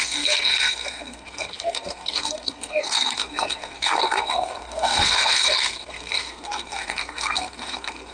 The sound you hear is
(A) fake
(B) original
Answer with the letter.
A